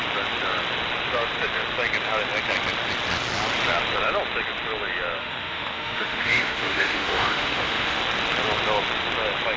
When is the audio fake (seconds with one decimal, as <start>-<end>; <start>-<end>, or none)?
5.2-8.0